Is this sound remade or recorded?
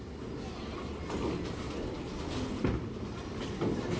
recorded